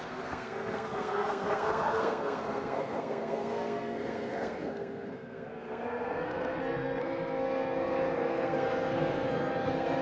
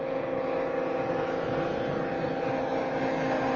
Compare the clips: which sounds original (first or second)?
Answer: second